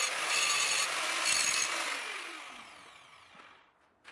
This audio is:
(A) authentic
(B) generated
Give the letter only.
A